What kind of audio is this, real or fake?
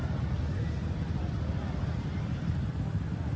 real